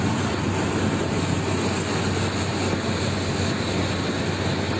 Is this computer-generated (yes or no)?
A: no